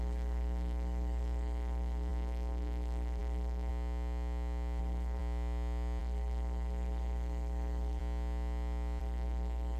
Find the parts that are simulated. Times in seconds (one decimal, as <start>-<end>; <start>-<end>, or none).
0.0-3.7; 4.8-5.2; 6.0-8.0; 9.0-9.8